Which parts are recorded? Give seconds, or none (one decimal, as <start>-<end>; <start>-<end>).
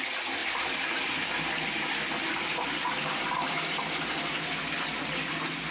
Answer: 0.0-5.7